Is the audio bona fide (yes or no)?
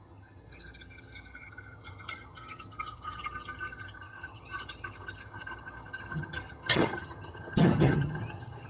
no